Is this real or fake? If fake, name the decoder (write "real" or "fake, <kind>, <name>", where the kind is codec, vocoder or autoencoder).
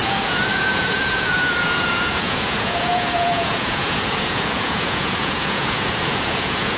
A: fake, vocoder, Vocos